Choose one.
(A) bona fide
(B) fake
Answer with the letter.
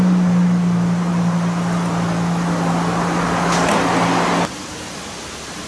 A